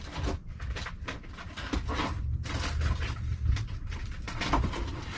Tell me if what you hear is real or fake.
fake